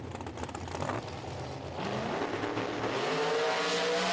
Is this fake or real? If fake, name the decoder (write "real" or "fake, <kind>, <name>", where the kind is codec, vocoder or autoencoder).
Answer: real